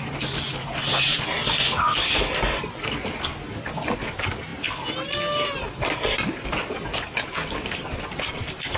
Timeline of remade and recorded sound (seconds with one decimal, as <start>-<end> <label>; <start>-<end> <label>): 0.0-8.8 recorded